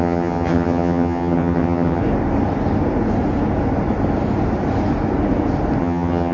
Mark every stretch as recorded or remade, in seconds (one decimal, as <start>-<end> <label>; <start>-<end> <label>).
0.0-2.0 remade; 2.0-5.8 recorded; 5.8-6.3 remade